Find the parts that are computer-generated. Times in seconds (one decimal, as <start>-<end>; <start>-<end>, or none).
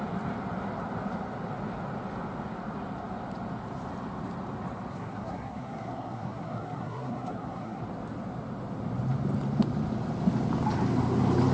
4.9-7.8